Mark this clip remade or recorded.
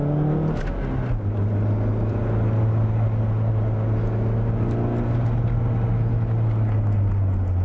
recorded